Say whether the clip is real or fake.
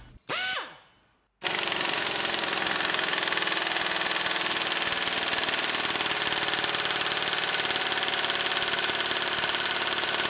real